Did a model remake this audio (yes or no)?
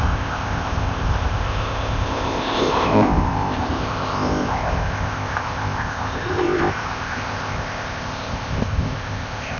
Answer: yes